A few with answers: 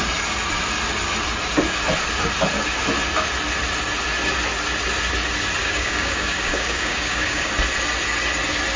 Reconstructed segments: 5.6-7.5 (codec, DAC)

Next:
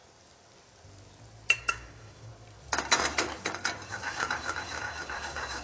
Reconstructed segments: 1.6-2.3 (codec, DAC); 3.9-5.6